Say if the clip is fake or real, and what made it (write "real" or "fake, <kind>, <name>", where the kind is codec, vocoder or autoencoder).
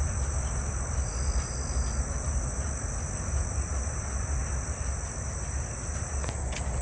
real